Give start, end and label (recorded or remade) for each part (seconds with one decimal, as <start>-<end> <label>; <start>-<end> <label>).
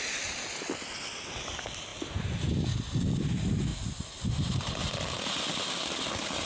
0.0-6.5 recorded